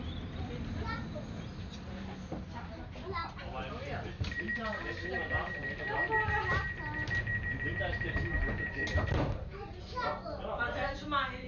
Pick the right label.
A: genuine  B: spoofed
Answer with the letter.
A